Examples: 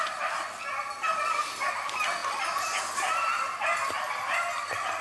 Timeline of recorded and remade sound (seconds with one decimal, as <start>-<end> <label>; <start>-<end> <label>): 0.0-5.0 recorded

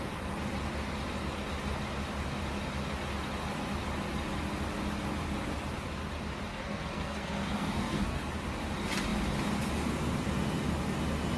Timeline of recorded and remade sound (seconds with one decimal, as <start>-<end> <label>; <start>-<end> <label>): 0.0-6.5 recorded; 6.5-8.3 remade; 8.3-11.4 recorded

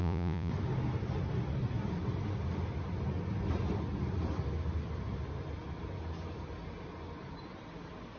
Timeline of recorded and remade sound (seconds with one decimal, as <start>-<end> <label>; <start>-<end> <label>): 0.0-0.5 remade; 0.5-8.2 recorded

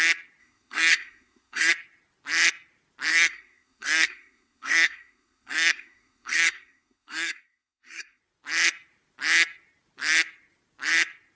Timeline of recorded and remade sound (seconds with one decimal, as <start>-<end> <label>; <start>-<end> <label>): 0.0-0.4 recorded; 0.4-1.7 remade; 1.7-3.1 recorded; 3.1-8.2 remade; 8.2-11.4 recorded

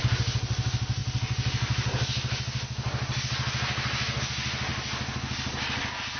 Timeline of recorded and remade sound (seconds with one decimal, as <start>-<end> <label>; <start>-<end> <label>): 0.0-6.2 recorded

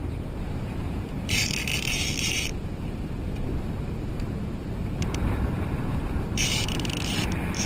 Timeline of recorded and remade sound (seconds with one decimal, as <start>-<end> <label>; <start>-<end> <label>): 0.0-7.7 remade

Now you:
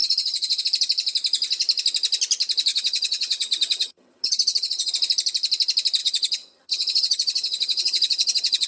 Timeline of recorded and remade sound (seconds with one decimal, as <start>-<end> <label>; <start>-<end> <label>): 0.0-0.6 remade; 0.6-2.7 recorded; 2.7-4.9 remade; 4.9-6.0 recorded; 6.0-8.7 remade